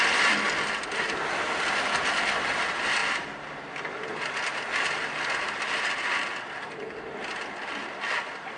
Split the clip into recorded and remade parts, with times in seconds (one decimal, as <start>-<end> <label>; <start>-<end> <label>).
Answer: 0.0-8.6 recorded